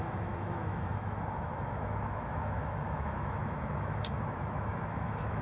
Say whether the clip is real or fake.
fake